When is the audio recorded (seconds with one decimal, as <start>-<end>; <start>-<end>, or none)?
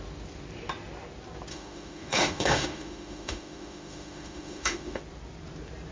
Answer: 0.0-1.5; 5.0-5.9